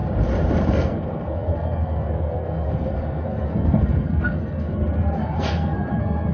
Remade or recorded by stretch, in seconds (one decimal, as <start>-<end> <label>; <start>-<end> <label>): 0.0-0.7 recorded; 0.7-6.3 remade